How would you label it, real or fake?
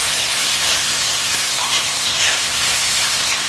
fake